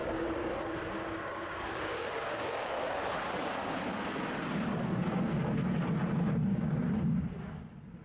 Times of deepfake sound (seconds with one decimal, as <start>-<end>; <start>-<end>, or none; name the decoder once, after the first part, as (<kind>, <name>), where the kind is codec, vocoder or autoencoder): 0.0-3.8 (codec, DAC); 6.5-7.2